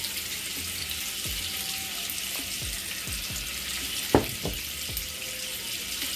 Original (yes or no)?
yes